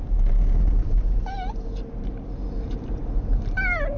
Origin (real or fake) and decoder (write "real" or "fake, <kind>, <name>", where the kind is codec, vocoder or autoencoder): real